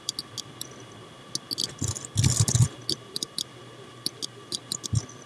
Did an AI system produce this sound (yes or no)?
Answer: no